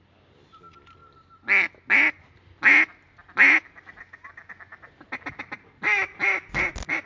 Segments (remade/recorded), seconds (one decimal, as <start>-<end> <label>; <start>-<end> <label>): 0.0-1.0 recorded; 1.0-1.7 remade; 1.7-7.1 recorded